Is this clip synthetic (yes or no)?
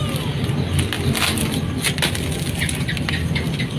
no